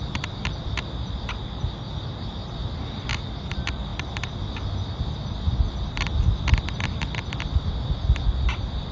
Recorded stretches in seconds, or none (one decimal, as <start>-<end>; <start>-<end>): 0.0-8.9